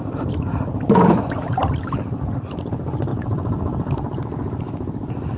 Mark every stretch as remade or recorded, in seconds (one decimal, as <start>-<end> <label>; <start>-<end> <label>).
0.0-5.4 recorded